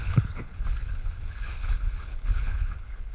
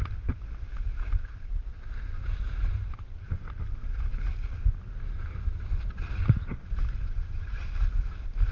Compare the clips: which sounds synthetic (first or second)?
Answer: first